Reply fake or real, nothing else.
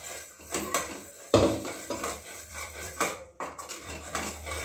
fake